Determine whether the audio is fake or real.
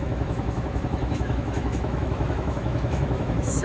fake